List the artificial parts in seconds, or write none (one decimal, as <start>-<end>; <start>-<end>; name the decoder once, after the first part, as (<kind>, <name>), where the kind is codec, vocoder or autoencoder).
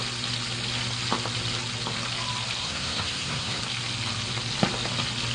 2.6-3.6 (codec, SNAC)